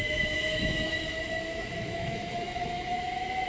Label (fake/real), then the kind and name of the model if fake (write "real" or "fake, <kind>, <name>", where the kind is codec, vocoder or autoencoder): fake, autoencoder, DAC-VAE